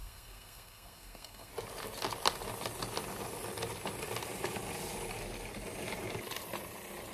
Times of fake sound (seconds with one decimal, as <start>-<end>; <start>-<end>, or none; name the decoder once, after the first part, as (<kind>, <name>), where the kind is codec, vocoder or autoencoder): 0.0-1.5 (codec, SNAC)